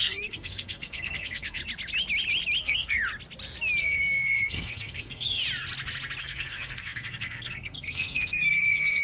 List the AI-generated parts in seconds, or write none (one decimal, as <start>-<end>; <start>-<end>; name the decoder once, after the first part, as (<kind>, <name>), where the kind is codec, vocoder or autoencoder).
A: 0.0-1.6 (codec, SNAC); 2.6-3.0; 3.8-5.4; 6.2-9.0